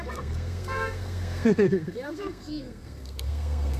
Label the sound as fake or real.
fake